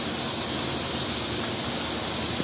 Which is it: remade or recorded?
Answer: recorded